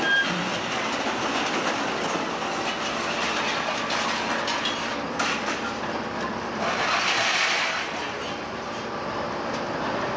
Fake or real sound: real